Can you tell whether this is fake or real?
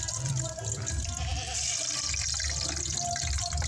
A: fake